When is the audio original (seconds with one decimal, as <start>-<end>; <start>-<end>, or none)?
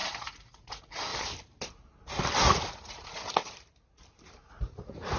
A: 1.1-2.5; 3.4-4.5